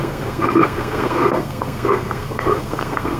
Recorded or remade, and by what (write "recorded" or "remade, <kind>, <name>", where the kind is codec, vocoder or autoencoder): remade, codec, SNAC